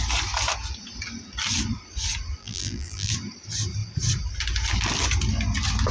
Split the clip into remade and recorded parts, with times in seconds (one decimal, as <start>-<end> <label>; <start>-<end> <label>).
0.0-2.4 recorded; 2.4-3.1 remade; 3.1-5.9 recorded